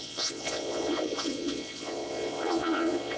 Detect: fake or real fake